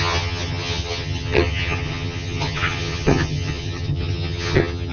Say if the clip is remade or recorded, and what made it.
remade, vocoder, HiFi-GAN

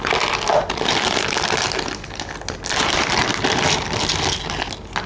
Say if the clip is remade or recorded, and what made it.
recorded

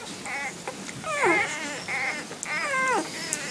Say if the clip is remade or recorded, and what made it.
recorded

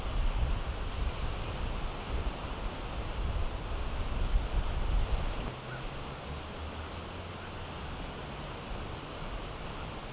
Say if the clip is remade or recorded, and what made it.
recorded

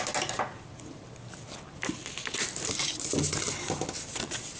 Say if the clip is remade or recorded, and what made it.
recorded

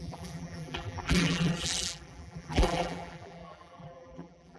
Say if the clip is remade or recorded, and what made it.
remade, vocoder, BigVGAN v2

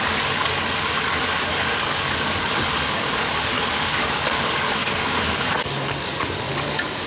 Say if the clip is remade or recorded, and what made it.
remade, codec, DAC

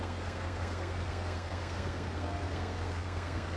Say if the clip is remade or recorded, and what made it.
remade, codec, SNAC